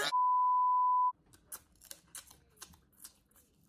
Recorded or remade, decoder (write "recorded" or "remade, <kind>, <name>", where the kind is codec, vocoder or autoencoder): recorded